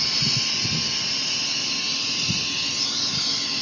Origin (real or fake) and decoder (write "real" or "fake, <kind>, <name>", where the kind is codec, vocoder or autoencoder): real